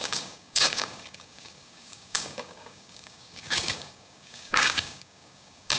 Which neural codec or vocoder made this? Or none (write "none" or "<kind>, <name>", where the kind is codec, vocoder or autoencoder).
codec, DAC